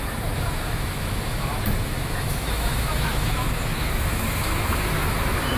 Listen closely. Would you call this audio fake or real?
fake